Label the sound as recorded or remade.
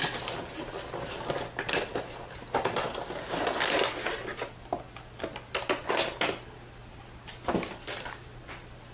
recorded